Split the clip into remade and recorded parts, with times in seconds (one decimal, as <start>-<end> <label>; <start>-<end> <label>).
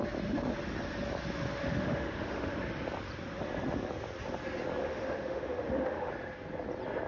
0.0-1.5 recorded; 1.5-2.5 remade; 2.5-4.8 recorded; 4.8-6.1 remade; 6.1-7.1 recorded